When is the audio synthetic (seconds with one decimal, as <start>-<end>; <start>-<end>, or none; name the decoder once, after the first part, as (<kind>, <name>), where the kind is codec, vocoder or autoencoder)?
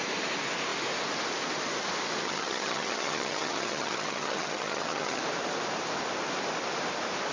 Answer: 2.2-5.2 (vocoder, HiFi-GAN)